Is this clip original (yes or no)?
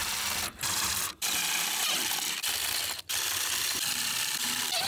no